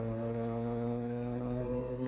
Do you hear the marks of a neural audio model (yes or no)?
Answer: yes